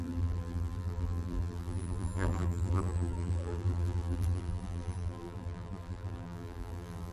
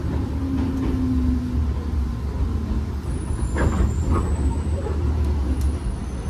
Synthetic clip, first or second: first